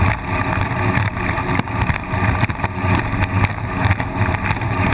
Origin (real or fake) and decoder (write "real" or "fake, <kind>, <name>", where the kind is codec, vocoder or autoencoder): real